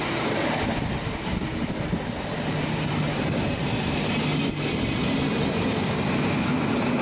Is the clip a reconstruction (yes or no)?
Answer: no